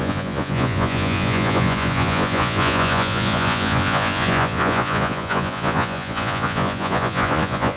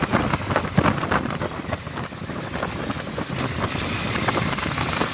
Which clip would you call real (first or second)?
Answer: second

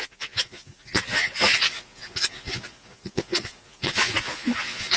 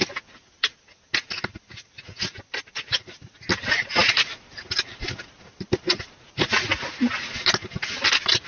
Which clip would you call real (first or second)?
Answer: second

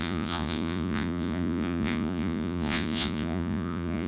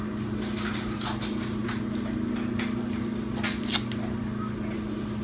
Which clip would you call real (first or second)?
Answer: second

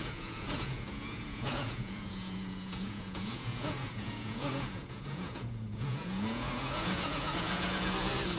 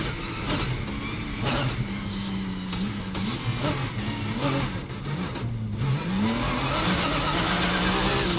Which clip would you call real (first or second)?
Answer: second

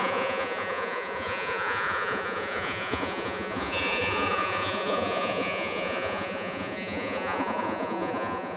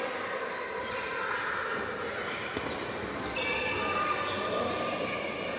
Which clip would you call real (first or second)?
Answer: second